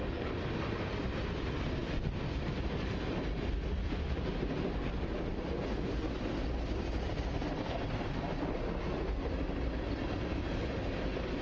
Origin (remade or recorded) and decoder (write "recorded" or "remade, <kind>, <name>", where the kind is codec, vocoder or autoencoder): recorded